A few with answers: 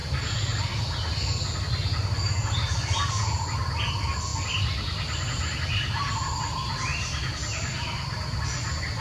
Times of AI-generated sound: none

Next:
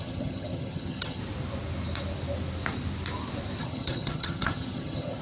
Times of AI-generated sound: 0.0-1.2 (vocoder, HiFi-GAN); 3.6-5.2

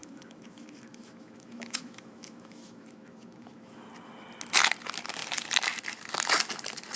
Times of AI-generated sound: 0.0-3.9 (autoencoder, DAC-VAE)

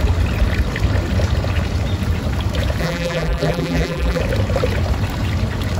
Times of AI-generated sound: 2.8-4.2 (vocoder, BigVGAN v2)

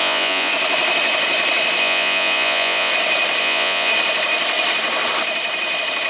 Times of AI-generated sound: 0.0-0.5 (vocoder, Vocos); 1.8-2.9; 3.4-3.9

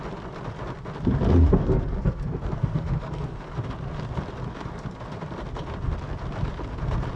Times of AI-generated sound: 1.6-3.4 (codec, SNAC)

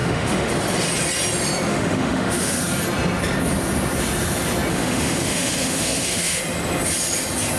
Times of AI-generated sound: 0.0-0.5 (autoencoder, DAC-VAE); 1.7-2.6; 4.7-6.4